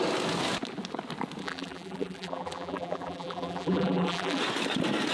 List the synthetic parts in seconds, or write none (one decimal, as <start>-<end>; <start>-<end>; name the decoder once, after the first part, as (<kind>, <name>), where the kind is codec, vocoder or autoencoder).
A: 1.4-4.4 (vocoder, BigVGAN v2)